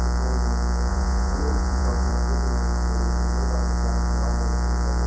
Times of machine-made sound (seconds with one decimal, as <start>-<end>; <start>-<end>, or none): 0.9-2.1